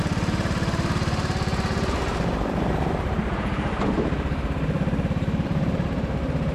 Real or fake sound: fake